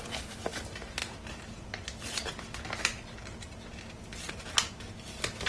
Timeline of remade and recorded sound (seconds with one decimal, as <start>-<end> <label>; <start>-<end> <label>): 0.0-5.5 recorded